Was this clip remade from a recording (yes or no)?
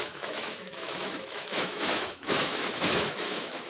yes